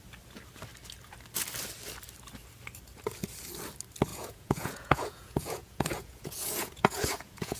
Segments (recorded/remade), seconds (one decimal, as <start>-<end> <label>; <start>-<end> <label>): 0.0-4.1 recorded; 4.1-7.6 remade

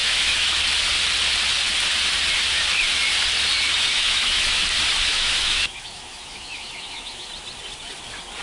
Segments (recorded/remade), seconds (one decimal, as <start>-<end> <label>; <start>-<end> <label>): 0.0-0.6 remade; 0.6-3.9 recorded; 3.9-4.6 remade; 4.6-5.1 recorded; 5.1-7.3 remade; 7.3-8.4 recorded